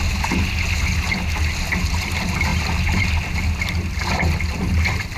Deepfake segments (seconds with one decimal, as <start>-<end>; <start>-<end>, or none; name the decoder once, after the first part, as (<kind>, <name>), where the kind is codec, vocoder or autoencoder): none